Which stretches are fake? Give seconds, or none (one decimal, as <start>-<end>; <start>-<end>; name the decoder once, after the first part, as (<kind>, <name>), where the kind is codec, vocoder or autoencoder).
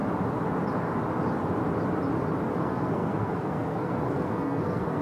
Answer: 2.6-5.0 (codec, SNAC)